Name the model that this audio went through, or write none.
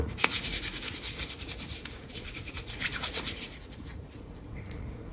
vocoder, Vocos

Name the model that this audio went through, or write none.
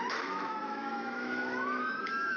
autoencoder, DAC-VAE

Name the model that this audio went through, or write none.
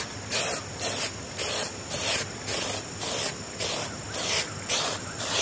none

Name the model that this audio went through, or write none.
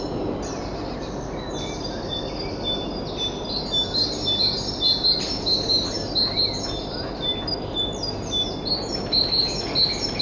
none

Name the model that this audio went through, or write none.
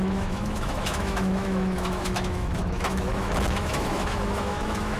autoencoder, DAC-VAE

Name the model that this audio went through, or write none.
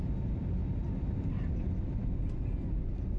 none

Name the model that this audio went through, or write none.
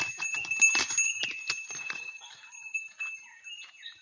none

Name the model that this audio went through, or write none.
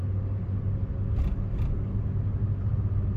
none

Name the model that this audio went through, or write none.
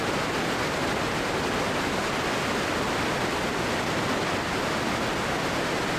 none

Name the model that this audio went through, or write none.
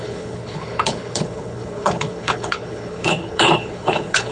codec, HILCodec